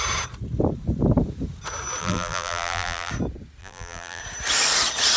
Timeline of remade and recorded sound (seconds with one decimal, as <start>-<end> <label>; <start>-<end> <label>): 0.0-2.0 recorded; 2.0-3.1 remade; 3.1-3.6 recorded; 3.6-4.2 remade; 4.2-5.2 recorded